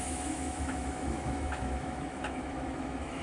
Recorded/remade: remade